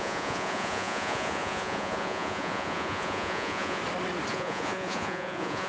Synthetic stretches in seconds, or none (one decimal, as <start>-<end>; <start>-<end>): 0.0-3.8; 4.3-5.7